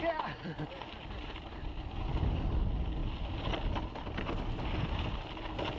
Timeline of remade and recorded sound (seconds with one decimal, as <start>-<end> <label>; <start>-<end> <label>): 0.0-3.0 remade; 3.0-5.8 recorded

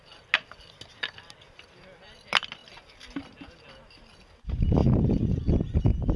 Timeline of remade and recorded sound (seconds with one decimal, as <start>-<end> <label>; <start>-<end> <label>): 0.0-6.2 recorded

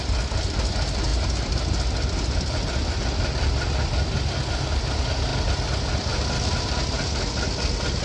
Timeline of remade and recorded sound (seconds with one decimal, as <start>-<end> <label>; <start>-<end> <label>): 0.0-8.0 recorded

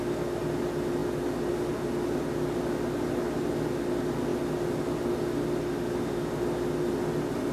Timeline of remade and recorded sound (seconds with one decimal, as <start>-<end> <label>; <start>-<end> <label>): 0.0-7.5 recorded

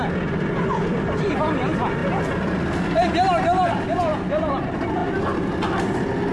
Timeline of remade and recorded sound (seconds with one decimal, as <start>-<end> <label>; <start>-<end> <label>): 0.0-2.0 remade; 2.0-4.5 recorded; 4.5-5.0 remade; 5.0-5.8 recorded; 5.8-6.3 remade

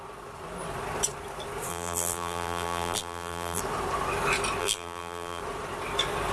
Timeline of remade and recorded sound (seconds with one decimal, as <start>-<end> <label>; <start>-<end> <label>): 0.0-1.7 recorded; 1.7-3.6 remade; 3.6-4.6 recorded; 4.6-5.4 remade; 5.4-6.3 recorded